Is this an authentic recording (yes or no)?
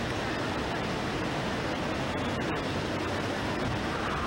yes